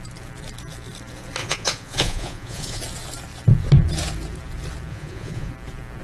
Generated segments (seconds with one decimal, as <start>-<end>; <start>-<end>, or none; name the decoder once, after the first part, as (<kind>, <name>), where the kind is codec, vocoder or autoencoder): 1.4-2.8 (vocoder, Vocos); 4.9-5.5